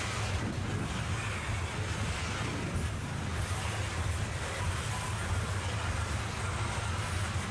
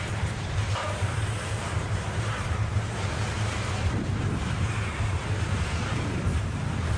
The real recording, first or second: first